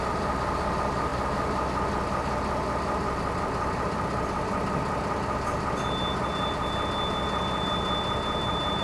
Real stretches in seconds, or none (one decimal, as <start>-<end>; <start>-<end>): 0.0-8.8